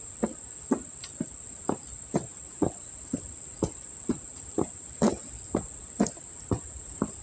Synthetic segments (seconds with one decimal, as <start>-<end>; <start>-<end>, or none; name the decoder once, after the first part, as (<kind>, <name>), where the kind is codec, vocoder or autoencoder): none